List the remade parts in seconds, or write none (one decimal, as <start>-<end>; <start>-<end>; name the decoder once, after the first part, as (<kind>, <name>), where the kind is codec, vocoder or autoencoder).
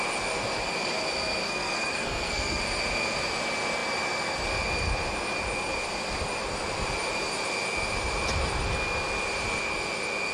1.4-2.6 (codec, SNAC)